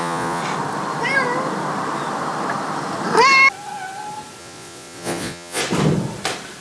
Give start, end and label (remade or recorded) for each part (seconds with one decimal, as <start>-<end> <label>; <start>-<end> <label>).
0.0-0.4 remade; 0.4-4.4 recorded; 4.4-5.6 remade; 5.6-6.6 recorded